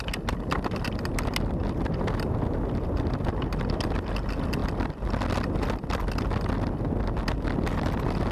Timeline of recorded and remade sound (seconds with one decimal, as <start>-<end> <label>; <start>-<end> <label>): 0.0-8.3 recorded